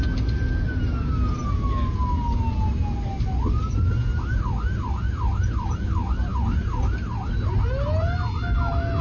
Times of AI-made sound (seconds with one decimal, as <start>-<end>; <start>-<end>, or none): none